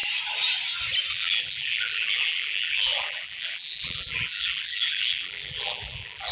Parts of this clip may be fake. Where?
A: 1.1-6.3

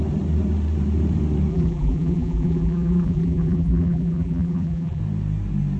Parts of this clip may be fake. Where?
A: 1.5-5.0

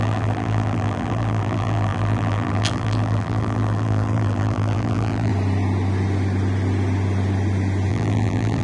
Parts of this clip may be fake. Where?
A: 0.0-5.3; 7.9-8.6

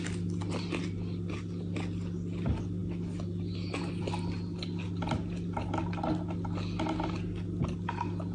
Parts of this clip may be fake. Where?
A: none